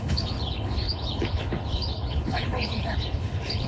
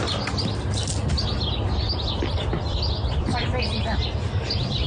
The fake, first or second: first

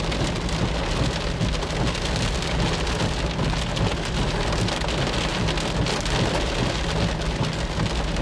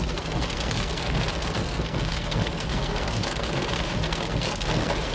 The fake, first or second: second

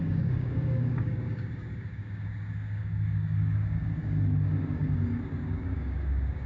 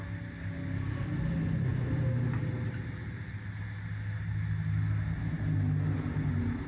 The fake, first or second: first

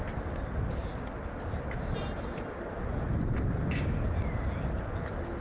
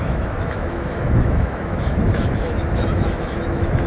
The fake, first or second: second